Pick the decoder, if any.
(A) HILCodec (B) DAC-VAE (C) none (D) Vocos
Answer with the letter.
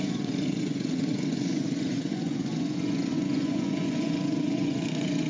D